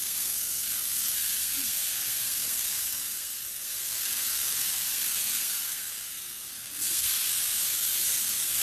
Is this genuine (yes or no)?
no